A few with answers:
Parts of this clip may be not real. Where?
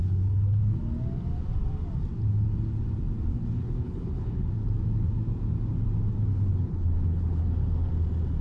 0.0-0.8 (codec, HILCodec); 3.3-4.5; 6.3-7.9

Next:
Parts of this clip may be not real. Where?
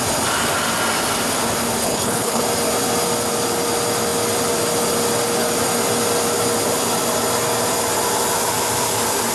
1.8-2.4 (codec, HILCodec)